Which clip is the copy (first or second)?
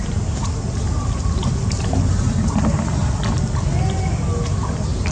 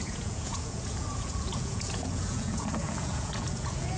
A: second